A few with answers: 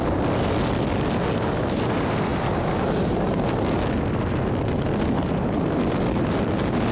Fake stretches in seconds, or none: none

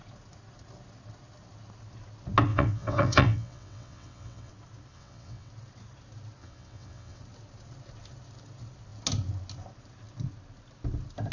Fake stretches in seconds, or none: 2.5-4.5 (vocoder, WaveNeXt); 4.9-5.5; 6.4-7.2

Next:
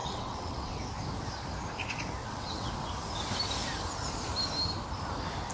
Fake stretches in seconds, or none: 0.0-0.8 (vocoder, WaveNeXt); 2.2-2.7

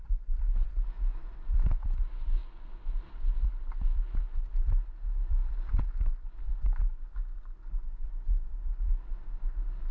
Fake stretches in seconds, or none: none

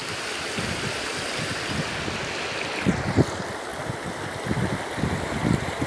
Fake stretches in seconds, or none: none